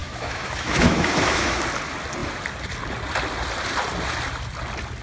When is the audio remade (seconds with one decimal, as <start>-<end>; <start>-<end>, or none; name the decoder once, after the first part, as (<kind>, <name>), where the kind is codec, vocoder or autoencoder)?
0.0-1.6 (autoencoder, DAC-VAE)